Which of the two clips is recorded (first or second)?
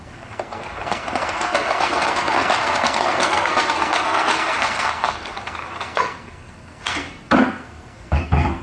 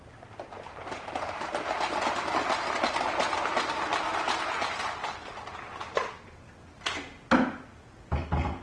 second